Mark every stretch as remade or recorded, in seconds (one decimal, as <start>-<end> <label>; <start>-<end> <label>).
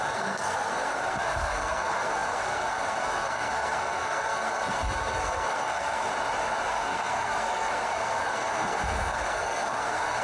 0.0-6.1 remade; 6.1-6.7 recorded; 6.7-10.2 remade